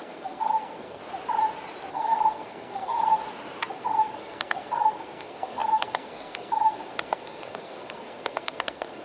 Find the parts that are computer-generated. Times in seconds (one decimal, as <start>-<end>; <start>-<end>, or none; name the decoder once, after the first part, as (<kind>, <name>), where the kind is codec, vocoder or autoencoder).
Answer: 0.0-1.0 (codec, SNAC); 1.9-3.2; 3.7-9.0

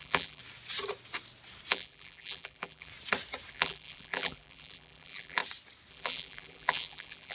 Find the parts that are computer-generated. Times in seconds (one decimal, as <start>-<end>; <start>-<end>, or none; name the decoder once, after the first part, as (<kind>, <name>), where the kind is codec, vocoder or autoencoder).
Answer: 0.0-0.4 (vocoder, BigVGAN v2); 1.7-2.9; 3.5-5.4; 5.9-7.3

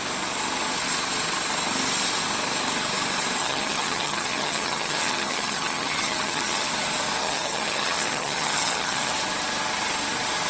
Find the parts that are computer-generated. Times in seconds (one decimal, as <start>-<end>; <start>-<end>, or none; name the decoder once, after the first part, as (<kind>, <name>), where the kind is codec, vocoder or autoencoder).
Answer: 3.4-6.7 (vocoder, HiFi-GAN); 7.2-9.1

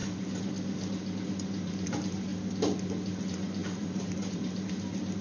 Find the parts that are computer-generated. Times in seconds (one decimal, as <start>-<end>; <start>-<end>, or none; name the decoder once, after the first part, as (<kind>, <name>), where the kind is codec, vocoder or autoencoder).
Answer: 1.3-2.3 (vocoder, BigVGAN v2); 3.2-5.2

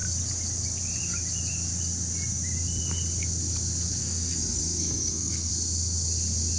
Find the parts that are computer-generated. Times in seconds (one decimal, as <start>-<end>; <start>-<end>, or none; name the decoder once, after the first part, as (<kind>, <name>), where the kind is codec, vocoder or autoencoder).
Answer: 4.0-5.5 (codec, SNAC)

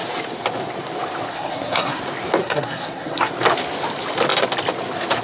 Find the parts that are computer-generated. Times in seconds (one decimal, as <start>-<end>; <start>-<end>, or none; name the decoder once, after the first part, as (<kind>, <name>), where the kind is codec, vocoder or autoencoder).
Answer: 1.3-2.0 (codec, SNAC); 2.4-3.3